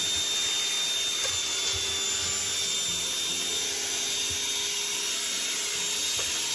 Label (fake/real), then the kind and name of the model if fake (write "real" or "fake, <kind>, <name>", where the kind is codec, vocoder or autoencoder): real